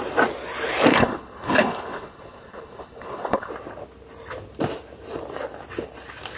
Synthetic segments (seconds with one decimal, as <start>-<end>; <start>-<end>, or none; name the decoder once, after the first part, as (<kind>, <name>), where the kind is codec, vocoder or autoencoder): 0.9-3.5 (codec, HILCodec)